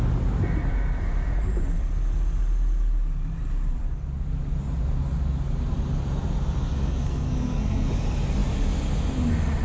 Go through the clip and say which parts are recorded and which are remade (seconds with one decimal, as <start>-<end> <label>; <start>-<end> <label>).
0.0-6.6 recorded; 6.6-7.9 remade; 7.9-9.6 recorded